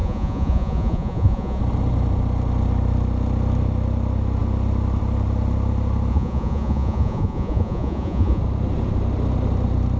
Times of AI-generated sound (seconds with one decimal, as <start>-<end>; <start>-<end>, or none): 0.0-1.6; 6.1-8.4

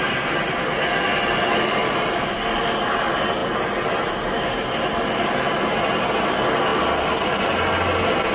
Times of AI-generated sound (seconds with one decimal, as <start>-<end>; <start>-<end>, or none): 1.8-2.9; 3.4-4.1